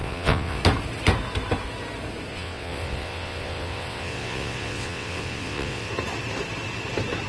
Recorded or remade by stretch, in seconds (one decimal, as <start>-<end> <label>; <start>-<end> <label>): 0.0-0.6 remade; 0.6-2.3 recorded; 2.3-5.9 remade; 5.9-7.3 recorded